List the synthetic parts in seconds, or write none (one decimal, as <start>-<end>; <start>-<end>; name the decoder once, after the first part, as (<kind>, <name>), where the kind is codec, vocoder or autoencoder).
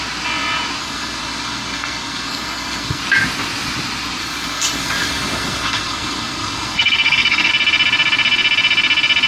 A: 0.8-3.0 (codec, SNAC); 4.2-7.5